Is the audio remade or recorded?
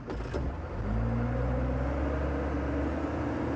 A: recorded